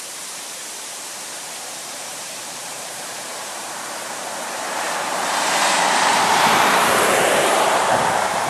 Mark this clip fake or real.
fake